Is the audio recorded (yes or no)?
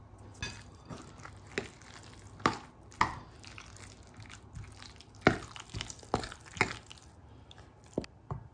yes